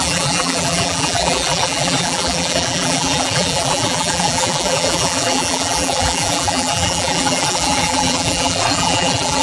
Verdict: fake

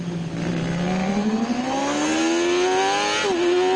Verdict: real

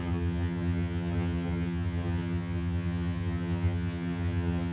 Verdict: fake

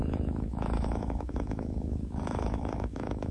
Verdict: fake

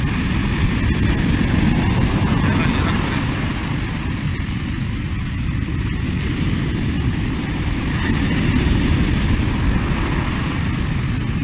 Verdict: real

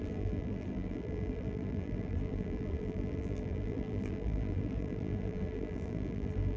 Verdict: fake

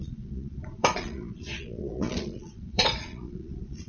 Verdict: fake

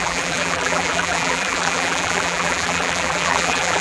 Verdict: fake